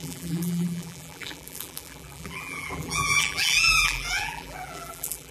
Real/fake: fake